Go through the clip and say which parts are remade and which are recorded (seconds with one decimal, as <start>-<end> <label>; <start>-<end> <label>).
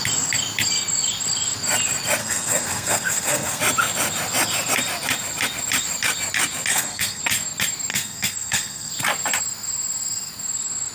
0.0-2.2 recorded; 2.2-3.6 remade; 3.6-6.7 recorded; 6.7-7.2 remade; 7.2-7.9 recorded; 7.9-8.9 remade; 8.9-10.9 recorded